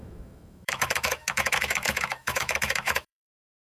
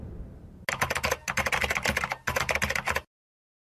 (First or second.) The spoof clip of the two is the first